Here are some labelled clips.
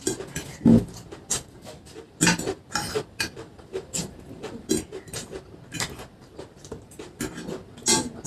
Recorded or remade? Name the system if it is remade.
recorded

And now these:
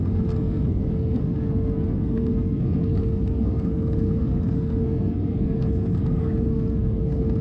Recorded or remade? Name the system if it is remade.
remade, codec, SNAC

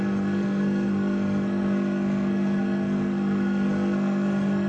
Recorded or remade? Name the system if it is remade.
remade, codec, SNAC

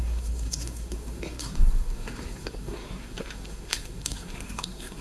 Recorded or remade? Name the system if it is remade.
remade, codec, SNAC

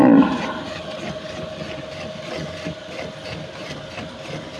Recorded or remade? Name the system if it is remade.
recorded